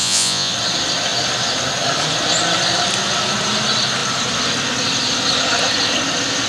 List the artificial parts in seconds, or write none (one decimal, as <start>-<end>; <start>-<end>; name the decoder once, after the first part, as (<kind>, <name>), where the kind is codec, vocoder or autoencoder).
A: 0.0-0.5 (vocoder, Vocos)